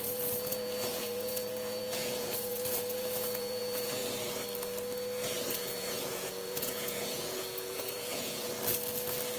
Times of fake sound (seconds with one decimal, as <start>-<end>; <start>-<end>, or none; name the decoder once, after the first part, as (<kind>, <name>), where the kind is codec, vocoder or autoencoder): 0.0-4.0 (vocoder, Vocos); 5.5-8.5